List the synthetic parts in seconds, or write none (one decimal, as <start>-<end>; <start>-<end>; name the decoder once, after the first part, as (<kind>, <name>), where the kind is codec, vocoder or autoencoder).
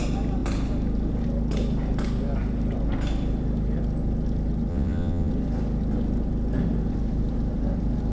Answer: 4.7-5.3 (vocoder, WaveNeXt)